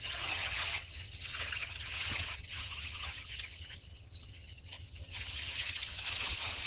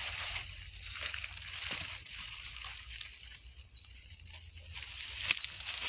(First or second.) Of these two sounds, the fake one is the first